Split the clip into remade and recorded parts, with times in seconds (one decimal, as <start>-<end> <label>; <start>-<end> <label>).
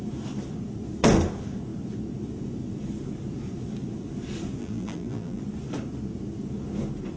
0.0-4.6 recorded; 4.6-5.4 remade; 5.4-7.2 recorded